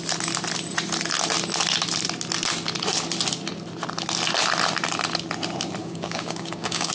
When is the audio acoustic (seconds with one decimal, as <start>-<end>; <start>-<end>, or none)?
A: 0.0-5.8